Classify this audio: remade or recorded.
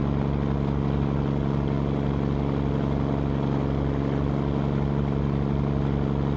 recorded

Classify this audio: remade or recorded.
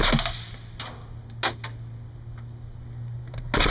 recorded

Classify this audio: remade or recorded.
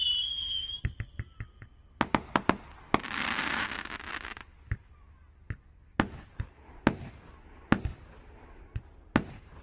recorded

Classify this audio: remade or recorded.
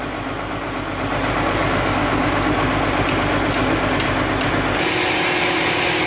recorded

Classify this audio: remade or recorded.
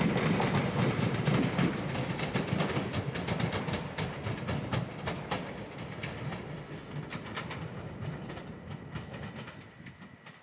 recorded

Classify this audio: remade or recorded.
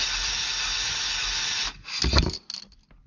recorded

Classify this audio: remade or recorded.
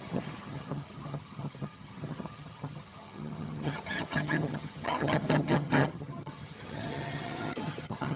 remade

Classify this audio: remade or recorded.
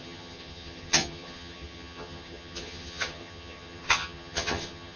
remade